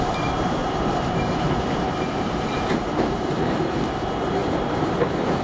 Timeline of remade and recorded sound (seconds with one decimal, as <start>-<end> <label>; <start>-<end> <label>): 0.0-0.6 recorded; 0.6-3.8 remade; 3.8-4.4 recorded; 4.4-5.0 remade; 5.0-5.4 recorded